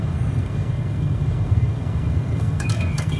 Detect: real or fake fake